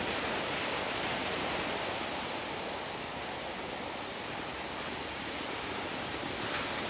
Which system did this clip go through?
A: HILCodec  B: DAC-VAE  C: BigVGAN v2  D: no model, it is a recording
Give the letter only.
D